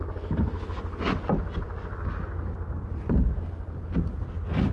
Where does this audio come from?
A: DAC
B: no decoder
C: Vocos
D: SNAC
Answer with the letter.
B